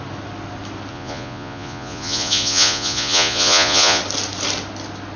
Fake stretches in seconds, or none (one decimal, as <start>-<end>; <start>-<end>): 0.9-4.0